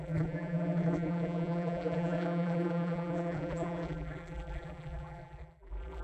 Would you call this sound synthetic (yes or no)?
yes